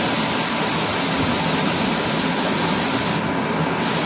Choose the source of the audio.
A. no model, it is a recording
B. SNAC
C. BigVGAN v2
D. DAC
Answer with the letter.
A